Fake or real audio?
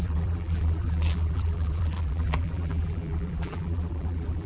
fake